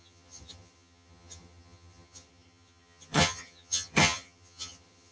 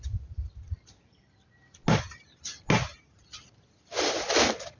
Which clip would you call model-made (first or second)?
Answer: first